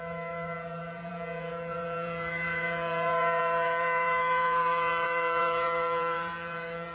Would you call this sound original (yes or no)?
no